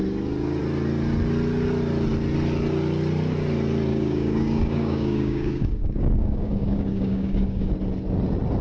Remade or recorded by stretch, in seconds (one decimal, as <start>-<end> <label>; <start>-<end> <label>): 0.0-3.9 recorded; 3.9-7.7 remade; 7.7-8.6 recorded